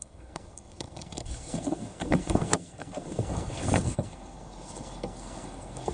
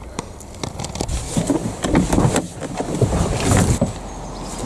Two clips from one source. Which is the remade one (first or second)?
first